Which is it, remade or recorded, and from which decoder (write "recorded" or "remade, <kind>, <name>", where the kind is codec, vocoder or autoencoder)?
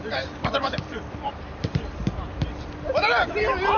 remade, vocoder, BigVGAN v2